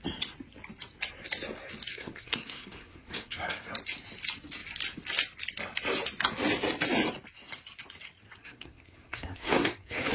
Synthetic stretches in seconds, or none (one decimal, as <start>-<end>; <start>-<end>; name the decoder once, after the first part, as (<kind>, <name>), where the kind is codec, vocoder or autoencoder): 1.9-3.7 (codec, SNAC); 8.4-10.1